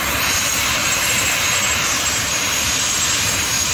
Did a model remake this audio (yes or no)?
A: yes